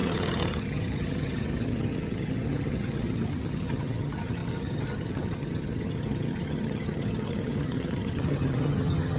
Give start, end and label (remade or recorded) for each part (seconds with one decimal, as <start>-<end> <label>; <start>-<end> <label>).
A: 0.0-9.2 remade